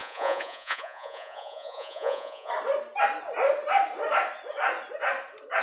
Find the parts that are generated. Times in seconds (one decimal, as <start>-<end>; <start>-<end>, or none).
0.0-2.5